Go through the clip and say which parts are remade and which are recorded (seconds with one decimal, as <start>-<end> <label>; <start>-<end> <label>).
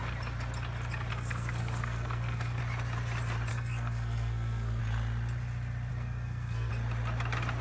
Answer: 0.0-1.1 recorded; 1.1-2.6 remade; 2.6-3.5 recorded; 3.5-4.8 remade; 4.8-5.9 recorded; 5.9-6.7 remade; 6.7-7.6 recorded